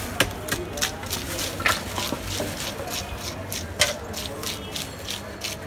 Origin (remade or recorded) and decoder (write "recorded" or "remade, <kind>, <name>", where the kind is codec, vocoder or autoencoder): recorded